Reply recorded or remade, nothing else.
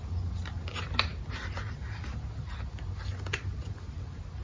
recorded